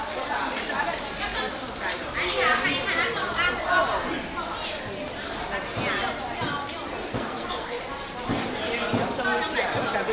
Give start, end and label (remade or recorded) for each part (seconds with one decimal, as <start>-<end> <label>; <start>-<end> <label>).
0.0-7.1 recorded; 7.1-7.8 remade; 7.8-10.1 recorded